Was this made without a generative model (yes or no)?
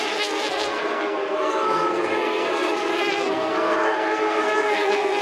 no